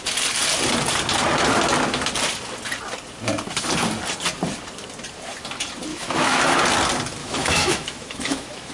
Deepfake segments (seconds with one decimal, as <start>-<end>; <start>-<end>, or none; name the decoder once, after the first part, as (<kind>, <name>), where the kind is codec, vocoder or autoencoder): 5.9-6.4 (autoencoder, DAC-VAE); 7.2-8.7